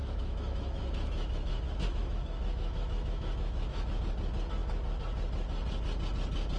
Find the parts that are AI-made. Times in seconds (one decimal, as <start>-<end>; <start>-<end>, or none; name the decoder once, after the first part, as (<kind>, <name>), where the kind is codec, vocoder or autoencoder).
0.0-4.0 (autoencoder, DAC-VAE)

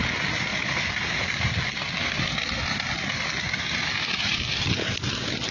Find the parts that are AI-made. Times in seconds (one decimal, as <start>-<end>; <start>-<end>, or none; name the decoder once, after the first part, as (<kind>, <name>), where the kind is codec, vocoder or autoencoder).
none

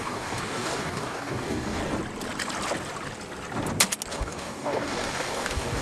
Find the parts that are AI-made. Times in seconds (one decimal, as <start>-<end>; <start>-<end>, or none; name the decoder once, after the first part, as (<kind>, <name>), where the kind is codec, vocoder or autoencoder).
0.0-1.8 (codec, DAC); 4.1-5.8